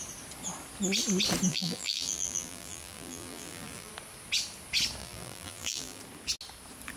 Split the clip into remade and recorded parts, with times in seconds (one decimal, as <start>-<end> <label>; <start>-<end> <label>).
0.0-1.5 recorded; 1.5-3.9 remade; 3.9-5.0 recorded; 5.0-6.0 remade; 6.0-7.0 recorded